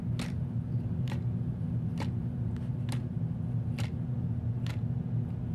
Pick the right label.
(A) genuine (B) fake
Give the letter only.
A